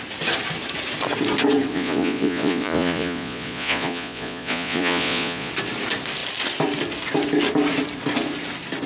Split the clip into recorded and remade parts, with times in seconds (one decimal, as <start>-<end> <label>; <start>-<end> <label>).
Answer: 0.0-1.7 recorded; 1.7-5.5 remade; 5.5-8.9 recorded